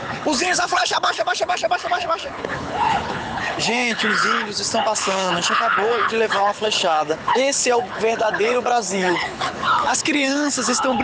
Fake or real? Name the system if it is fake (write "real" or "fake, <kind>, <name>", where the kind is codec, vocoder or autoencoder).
fake, codec, HILCodec